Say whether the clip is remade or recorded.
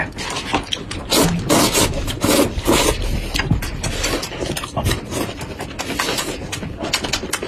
recorded